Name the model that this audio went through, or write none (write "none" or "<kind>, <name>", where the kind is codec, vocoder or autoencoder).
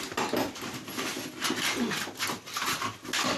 none